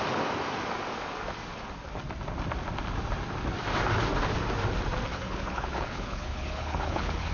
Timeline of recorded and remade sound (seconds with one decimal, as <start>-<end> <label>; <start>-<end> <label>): 0.0-5.1 recorded; 5.1-7.3 remade